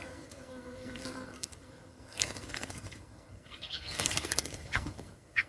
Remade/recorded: remade